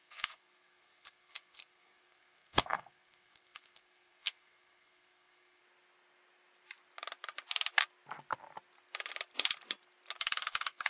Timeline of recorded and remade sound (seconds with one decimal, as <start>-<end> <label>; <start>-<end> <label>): 0.0-5.6 remade; 5.6-10.2 recorded; 10.2-10.9 remade